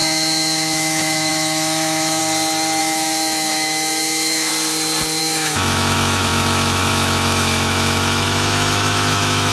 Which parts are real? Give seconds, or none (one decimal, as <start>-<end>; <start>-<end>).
2.2-2.8; 4.5-5.2